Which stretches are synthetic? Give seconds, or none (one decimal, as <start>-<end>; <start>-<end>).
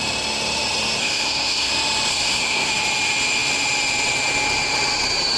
1.0-1.7; 2.1-2.7